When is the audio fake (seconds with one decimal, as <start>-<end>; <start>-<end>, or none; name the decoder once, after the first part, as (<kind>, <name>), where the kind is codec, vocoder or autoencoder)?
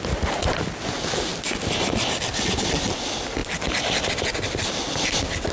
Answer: none